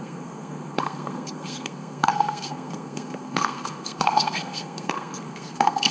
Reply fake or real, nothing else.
fake